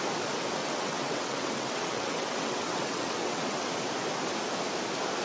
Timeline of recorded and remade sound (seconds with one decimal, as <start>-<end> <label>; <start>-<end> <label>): 0.0-0.6 recorded; 0.6-3.7 remade; 3.7-5.2 recorded